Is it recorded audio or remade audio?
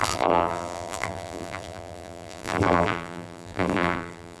remade